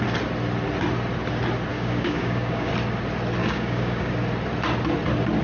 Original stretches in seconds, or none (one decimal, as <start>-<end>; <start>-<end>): 0.0-1.7; 2.7-3.4; 4.1-5.4